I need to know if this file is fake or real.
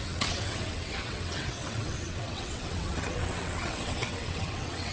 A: fake